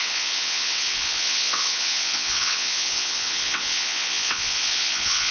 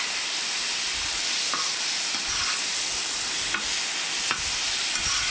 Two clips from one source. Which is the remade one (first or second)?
first